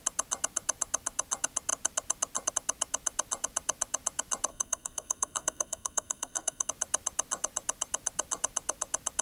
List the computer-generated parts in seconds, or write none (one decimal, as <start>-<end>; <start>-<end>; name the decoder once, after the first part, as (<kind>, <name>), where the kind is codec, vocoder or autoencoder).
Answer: 4.5-6.7 (codec, SNAC)

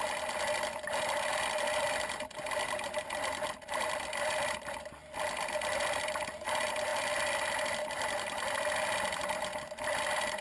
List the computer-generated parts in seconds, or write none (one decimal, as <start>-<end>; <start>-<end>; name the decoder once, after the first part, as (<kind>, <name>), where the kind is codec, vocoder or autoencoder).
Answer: none

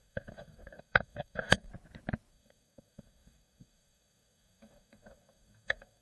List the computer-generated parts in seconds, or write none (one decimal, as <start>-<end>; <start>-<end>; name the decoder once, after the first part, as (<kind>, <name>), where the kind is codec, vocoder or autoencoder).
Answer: 0.0-1.7 (codec, DAC); 2.3-6.0

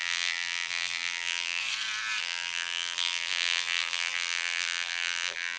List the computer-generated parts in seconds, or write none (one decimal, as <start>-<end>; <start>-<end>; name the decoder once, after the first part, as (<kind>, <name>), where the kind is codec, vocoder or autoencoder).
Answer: 0.0-1.6 (vocoder, BigVGAN v2); 2.2-5.6

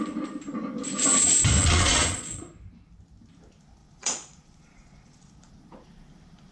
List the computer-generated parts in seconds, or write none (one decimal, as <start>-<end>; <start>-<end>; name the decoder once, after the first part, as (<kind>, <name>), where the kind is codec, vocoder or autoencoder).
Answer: 1.6-2.5 (vocoder, Vocos); 3.8-5.5

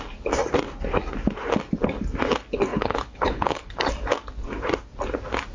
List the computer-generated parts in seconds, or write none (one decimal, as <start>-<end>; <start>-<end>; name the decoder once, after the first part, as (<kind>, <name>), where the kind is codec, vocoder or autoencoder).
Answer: 2.7-3.7 (codec, HILCodec)